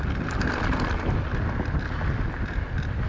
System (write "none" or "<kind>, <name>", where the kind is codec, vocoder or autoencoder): none